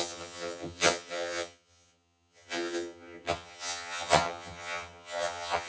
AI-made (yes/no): yes